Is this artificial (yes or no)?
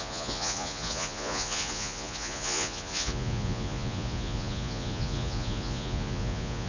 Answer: yes